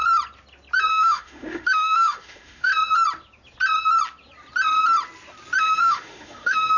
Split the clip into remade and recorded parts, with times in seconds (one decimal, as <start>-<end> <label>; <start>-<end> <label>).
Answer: 0.0-0.9 recorded; 0.9-2.7 remade; 2.7-5.6 recorded; 5.6-6.8 remade